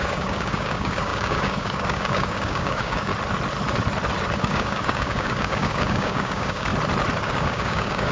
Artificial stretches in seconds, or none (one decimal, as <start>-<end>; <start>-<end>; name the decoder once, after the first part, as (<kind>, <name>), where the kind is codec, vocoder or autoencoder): 0.0-3.1 (codec, DAC); 4.4-6.7; 7.2-8.1